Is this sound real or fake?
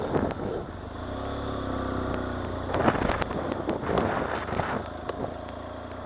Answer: real